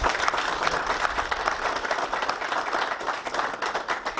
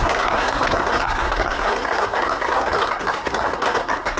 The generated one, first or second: second